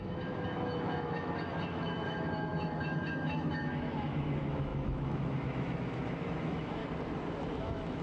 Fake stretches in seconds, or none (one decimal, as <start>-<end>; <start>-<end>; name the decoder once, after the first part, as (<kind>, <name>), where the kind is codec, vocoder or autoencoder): 0.0-6.8 (autoencoder, DAC-VAE); 7.6-8.0